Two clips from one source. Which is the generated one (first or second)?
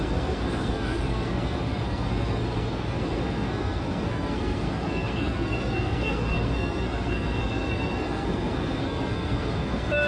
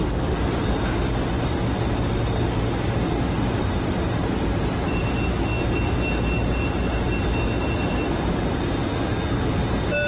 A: first